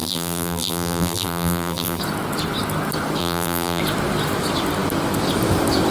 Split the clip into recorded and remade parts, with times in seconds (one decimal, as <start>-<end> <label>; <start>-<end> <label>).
0.0-2.0 remade; 2.0-3.2 recorded; 3.2-3.8 remade; 3.8-5.9 recorded